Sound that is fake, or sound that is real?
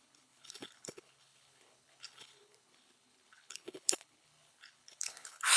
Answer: fake